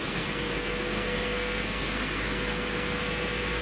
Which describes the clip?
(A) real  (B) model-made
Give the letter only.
B